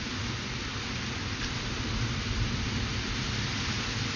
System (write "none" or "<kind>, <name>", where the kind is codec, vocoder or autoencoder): none